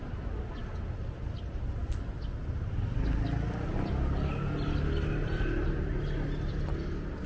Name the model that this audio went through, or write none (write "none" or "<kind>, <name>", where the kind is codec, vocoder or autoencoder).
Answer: none